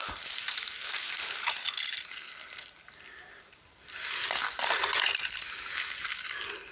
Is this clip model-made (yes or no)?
no